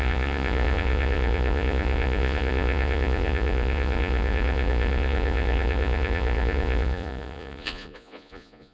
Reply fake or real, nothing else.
fake